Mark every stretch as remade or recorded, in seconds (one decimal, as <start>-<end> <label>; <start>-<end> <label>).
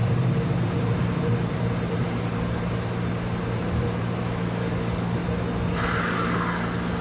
0.0-4.2 recorded; 4.2-5.2 remade; 5.2-6.0 recorded; 6.0-7.0 remade